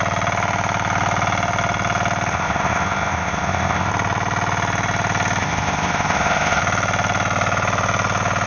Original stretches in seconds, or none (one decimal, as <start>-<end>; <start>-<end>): 0.0-2.3; 3.9-5.4; 6.6-8.5